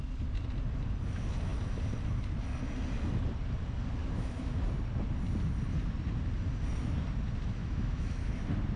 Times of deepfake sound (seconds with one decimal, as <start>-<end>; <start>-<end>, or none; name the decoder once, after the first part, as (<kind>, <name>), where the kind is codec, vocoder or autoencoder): 4.0-4.6 (autoencoder, DAC-VAE); 7.6-8.3